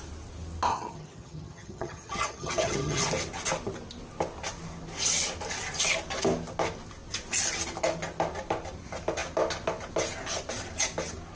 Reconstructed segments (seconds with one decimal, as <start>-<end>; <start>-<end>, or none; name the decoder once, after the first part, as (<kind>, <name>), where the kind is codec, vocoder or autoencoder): 0.7-3.0 (vocoder, HiFi-GAN)